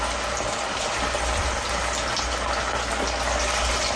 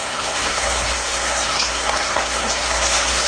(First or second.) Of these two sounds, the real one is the first